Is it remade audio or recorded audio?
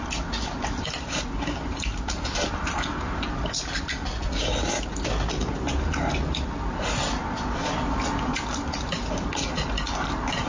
recorded